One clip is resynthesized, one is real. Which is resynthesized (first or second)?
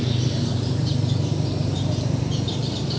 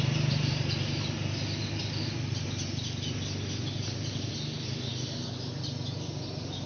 first